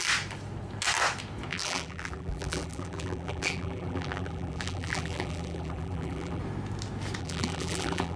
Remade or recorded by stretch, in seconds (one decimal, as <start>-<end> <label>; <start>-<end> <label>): 0.0-1.5 recorded; 1.5-6.4 remade; 6.4-7.2 recorded; 7.2-8.2 remade